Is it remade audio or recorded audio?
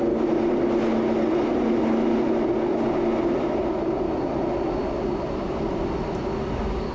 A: recorded